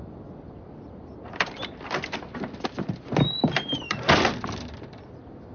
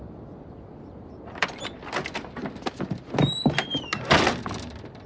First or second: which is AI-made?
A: first